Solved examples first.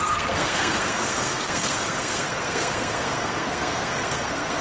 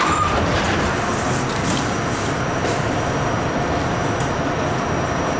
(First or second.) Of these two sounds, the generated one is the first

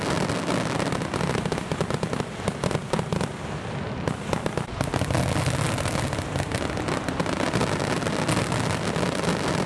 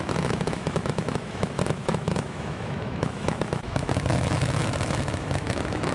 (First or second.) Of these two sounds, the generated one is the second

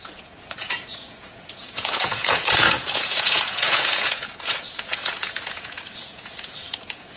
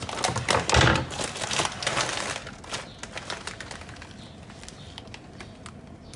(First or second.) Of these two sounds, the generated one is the first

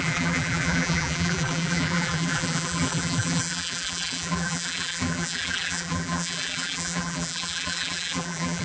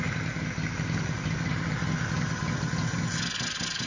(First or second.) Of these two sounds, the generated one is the first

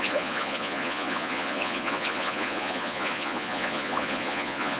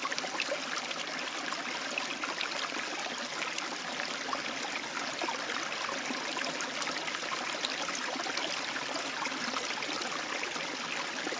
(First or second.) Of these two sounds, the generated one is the first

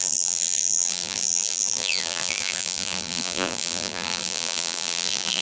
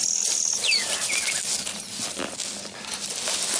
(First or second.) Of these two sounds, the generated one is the first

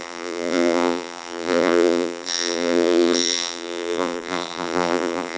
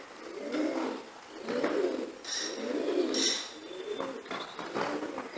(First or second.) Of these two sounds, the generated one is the first